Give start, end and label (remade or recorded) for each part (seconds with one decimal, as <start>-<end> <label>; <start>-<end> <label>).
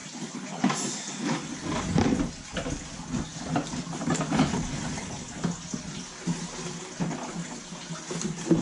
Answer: 0.0-1.2 remade; 1.2-8.6 recorded